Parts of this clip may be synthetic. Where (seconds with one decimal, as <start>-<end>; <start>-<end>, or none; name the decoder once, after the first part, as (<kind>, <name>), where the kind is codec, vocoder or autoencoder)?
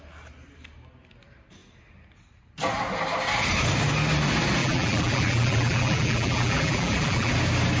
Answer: 4.6-7.3 (vocoder, BigVGAN v2)